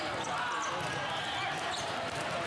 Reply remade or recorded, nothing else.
recorded